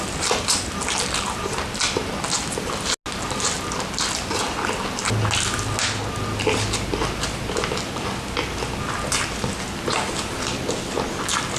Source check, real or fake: real